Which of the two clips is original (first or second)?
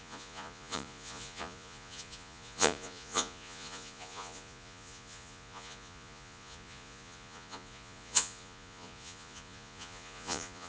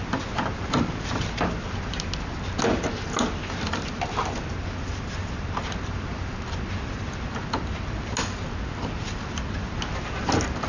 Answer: second